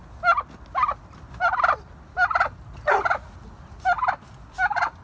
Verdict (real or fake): real